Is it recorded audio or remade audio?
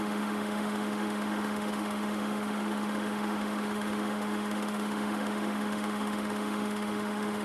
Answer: remade